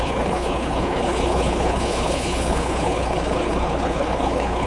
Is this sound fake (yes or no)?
yes